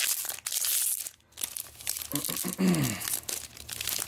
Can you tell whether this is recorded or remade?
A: recorded